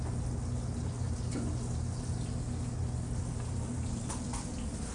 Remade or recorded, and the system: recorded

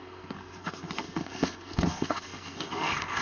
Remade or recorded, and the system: remade, codec, SNAC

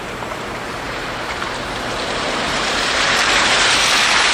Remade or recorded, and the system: remade, vocoder, BigVGAN v2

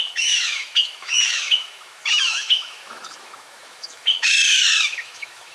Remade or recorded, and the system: remade, autoencoder, DAC-VAE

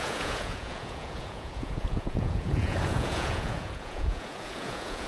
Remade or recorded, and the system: remade, vocoder, Vocos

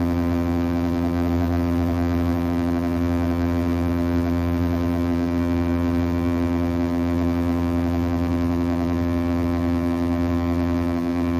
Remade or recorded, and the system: remade, vocoder, BigVGAN v2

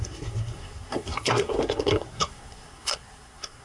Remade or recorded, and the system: remade, codec, SNAC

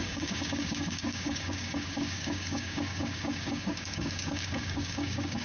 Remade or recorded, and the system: remade, codec, DAC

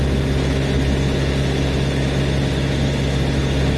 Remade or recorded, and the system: recorded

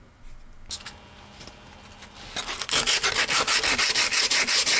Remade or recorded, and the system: recorded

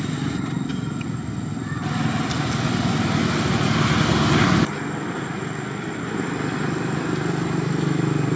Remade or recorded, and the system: recorded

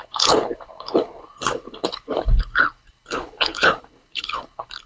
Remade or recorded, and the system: remade, codec, HILCodec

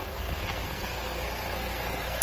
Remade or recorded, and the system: remade, codec, SNAC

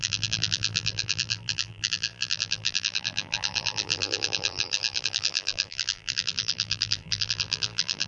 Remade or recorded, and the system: remade, vocoder, BigVGAN v2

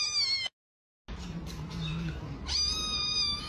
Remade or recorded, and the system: recorded